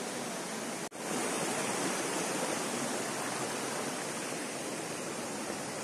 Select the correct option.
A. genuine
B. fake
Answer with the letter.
A